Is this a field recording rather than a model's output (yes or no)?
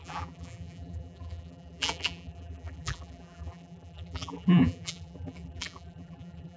no